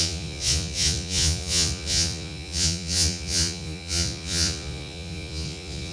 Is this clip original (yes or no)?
no